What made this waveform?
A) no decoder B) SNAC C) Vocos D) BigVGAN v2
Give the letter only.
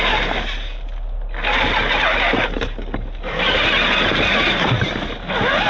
A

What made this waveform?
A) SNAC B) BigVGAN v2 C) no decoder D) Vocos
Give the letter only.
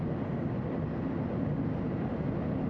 C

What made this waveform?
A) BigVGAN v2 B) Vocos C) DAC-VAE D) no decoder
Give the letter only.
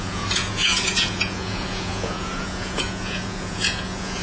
B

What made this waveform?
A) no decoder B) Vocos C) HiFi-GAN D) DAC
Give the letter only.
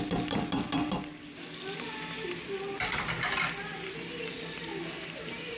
A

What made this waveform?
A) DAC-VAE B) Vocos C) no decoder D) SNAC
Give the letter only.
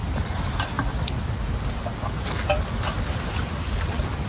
C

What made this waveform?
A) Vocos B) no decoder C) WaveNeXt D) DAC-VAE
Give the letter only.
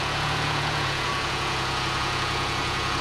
A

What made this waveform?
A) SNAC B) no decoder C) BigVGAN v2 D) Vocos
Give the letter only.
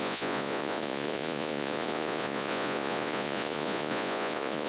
D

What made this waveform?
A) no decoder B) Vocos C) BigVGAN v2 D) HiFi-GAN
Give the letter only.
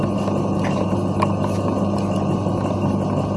A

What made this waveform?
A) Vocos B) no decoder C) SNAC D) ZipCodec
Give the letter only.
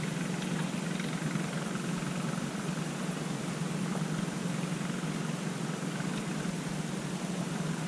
B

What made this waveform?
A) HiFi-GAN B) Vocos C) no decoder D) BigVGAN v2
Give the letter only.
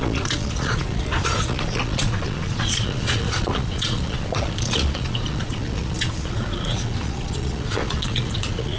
B